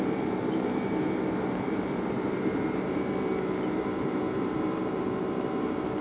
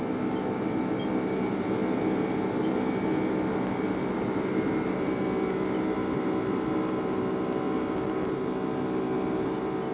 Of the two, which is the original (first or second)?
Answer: second